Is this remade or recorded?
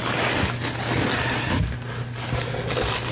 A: recorded